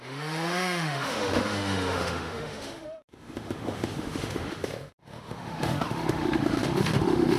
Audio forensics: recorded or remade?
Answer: remade